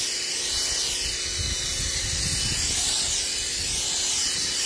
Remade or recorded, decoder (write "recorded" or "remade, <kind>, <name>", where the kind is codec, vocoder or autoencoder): recorded